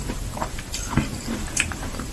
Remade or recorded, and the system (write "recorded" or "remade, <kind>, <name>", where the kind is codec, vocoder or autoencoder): remade, vocoder, BigVGAN v2